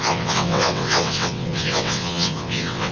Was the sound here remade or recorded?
remade